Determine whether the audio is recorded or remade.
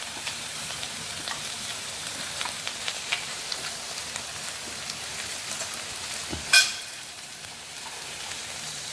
remade